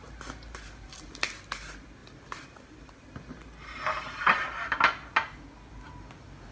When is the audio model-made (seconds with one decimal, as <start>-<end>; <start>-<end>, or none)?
none

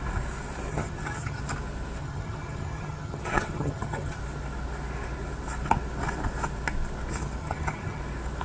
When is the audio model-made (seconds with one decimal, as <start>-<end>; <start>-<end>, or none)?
0.7-1.4; 2.0-4.2; 7.4-8.0

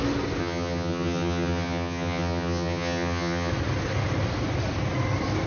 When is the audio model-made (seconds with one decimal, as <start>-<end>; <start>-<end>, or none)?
0.4-3.5